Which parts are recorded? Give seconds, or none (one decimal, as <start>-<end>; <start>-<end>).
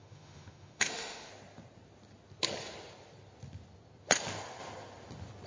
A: 1.3-5.5